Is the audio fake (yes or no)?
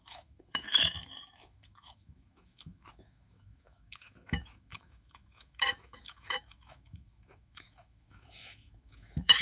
yes